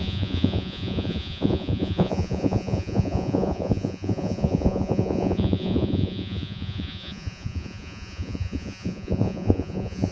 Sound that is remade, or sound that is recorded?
remade